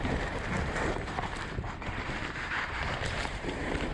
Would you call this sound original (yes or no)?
no